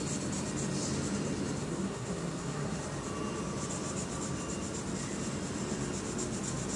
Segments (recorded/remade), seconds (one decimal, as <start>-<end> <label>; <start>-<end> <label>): 0.0-1.6 recorded; 1.6-2.8 remade; 2.8-6.8 recorded